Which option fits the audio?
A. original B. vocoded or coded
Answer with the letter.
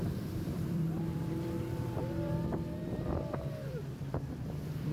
B